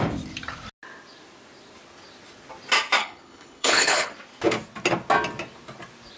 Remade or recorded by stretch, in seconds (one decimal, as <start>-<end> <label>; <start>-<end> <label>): 0.0-3.0 recorded; 3.0-4.1 remade; 4.1-6.2 recorded